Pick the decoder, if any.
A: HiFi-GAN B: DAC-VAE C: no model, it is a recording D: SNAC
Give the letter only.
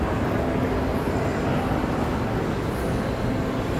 C